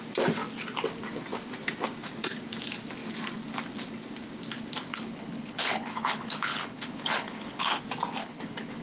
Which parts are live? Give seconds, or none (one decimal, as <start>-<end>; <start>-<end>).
0.0-4.9; 7.8-8.2